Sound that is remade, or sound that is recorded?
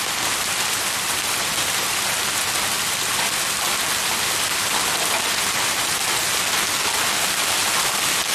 recorded